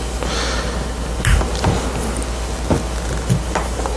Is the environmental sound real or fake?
real